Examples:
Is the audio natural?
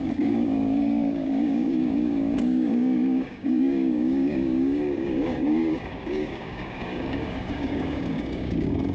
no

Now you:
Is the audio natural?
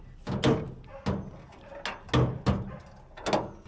yes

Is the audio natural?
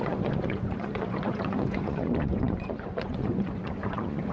no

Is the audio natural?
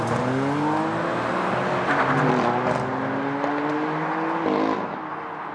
yes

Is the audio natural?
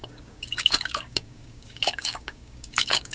no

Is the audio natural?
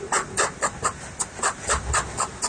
yes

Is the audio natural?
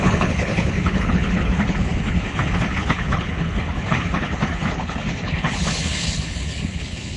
no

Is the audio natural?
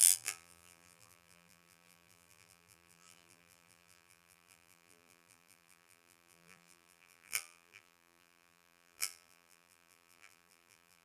no